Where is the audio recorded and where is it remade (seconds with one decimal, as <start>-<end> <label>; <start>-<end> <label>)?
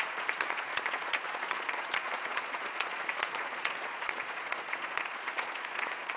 0.0-6.2 remade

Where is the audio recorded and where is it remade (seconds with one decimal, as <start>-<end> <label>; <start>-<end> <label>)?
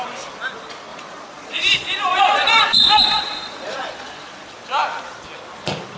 0.0-0.9 recorded; 0.9-4.5 remade; 4.5-6.0 recorded